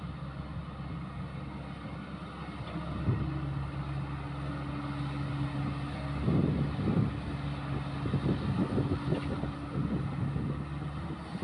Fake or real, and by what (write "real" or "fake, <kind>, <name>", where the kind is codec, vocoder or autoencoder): real